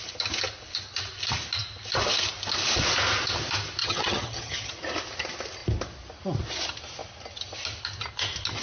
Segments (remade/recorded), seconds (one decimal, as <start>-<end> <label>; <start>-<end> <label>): 0.0-3.8 recorded; 3.8-4.7 remade; 4.7-8.6 recorded